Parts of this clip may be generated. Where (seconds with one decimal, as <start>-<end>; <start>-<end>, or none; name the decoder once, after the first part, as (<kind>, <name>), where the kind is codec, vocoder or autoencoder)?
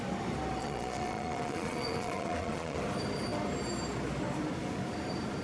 0.6-2.8 (vocoder, Vocos)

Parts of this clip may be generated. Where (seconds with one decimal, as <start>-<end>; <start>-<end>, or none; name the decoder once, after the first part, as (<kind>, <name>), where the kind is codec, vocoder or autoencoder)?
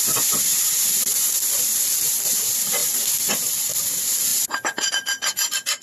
0.5-1.1 (vocoder, BigVGAN v2); 4.3-4.9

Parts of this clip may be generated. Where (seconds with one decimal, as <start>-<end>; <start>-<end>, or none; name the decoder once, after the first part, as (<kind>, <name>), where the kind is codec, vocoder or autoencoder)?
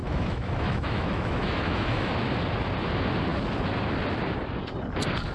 0.0-2.1 (autoencoder, DAC-VAE)